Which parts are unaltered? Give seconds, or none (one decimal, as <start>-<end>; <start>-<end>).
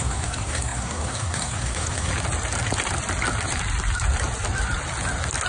2.1-5.5